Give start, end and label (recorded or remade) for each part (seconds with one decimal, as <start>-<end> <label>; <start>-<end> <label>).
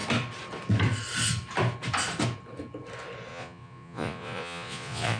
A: 0.0-3.3 recorded; 3.3-5.2 remade